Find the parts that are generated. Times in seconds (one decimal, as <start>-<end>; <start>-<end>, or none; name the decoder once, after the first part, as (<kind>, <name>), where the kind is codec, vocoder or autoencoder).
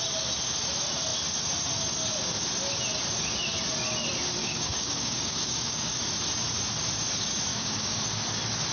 4.4-6.0 (codec, DAC); 7.5-8.0